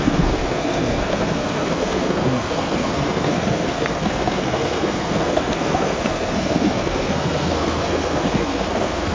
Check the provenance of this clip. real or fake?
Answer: fake